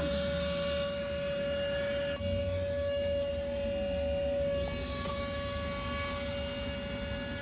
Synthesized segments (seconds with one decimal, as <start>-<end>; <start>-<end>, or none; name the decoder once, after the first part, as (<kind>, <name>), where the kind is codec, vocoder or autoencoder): 2.4-3.3 (autoencoder, DAC-VAE)